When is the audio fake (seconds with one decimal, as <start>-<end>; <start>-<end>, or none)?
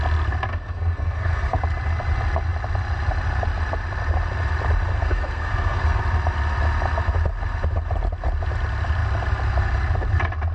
0.5-1.6; 4.9-6.0